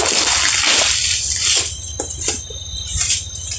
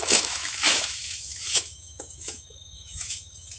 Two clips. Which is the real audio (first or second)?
first